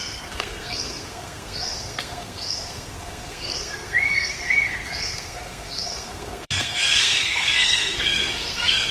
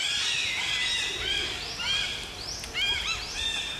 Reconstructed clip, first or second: first